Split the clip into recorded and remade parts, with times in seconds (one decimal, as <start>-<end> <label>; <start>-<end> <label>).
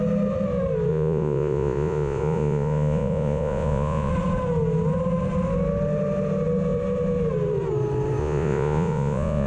0.0-0.9 recorded; 0.9-4.1 remade; 4.1-8.2 recorded; 8.2-9.5 remade